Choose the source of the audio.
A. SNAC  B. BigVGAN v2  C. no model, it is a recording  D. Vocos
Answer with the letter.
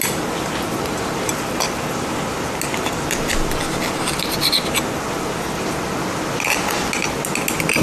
C